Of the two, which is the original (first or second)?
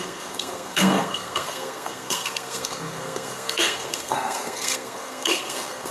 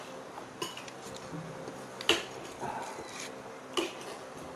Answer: second